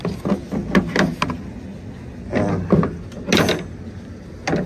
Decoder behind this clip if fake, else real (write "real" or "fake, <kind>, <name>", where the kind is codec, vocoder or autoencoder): real